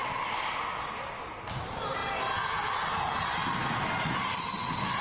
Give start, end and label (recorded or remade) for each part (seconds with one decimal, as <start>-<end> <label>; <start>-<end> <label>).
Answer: 0.0-5.0 recorded